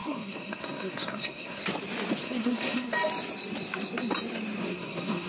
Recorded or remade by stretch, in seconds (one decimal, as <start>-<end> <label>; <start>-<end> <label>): 0.0-1.6 remade; 1.6-2.2 recorded; 2.2-2.9 remade; 2.9-4.6 recorded; 4.6-5.3 remade